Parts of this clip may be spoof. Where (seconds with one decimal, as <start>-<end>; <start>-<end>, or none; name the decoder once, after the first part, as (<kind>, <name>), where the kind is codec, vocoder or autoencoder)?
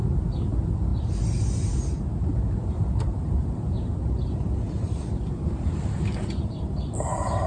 0.0-0.9 (vocoder, BigVGAN v2); 2.3-7.5